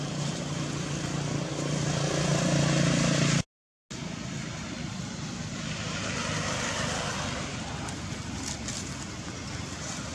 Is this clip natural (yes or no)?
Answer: yes